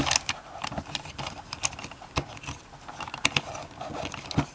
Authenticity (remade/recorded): recorded